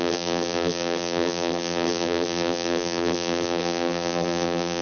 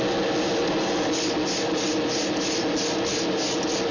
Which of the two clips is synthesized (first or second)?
first